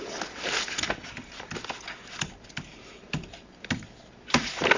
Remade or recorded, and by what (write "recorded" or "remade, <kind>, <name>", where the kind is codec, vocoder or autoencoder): recorded